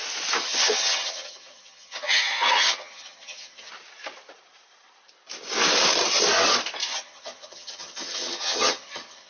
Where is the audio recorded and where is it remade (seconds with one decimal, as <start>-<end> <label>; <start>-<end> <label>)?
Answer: 0.0-0.4 recorded; 0.4-3.7 remade; 3.7-6.8 recorded; 6.8-9.3 remade